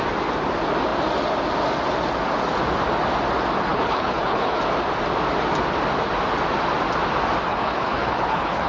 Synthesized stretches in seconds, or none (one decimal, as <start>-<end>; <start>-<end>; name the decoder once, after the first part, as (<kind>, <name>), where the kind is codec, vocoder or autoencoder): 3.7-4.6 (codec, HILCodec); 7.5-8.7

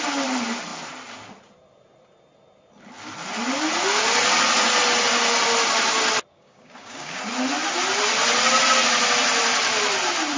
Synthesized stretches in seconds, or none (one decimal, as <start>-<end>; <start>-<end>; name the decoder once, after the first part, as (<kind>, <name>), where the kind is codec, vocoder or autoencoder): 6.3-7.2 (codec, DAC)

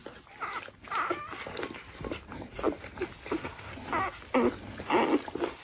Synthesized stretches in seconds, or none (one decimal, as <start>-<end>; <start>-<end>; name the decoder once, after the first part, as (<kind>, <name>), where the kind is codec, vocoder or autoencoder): 3.3-3.7 (autoencoder, DAC-VAE)

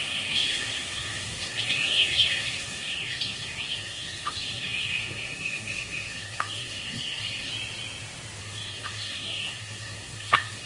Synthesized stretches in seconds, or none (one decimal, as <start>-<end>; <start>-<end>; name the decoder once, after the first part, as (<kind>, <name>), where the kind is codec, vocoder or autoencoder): 0.0-7.5 (codec, SNAC); 8.4-10.7

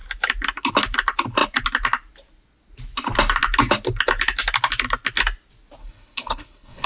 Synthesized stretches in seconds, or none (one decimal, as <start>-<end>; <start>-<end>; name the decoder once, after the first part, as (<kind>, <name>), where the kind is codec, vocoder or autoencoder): 5.8-6.9 (codec, HILCodec)